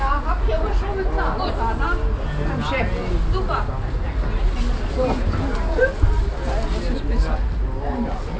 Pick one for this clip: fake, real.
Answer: real